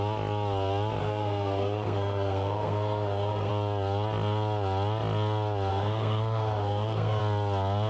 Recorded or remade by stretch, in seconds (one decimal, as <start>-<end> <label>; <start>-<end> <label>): 0.0-1.0 recorded; 1.0-3.5 remade; 3.5-5.7 recorded; 5.7-7.2 remade; 7.2-7.9 recorded